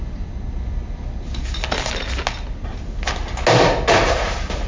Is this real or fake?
real